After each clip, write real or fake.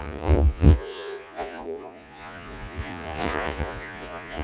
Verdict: fake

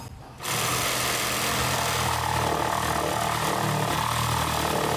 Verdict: real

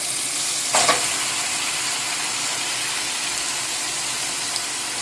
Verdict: fake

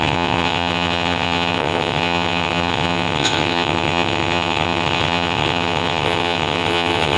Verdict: fake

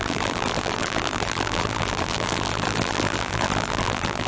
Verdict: fake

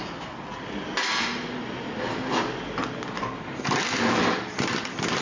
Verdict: real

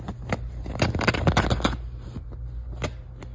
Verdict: real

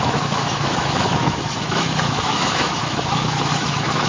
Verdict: fake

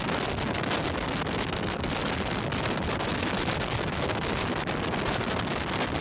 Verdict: real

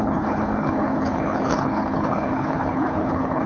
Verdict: fake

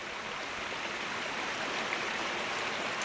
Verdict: real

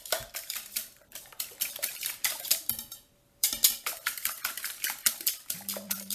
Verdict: fake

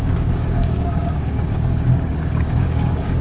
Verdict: fake